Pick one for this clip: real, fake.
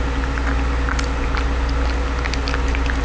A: real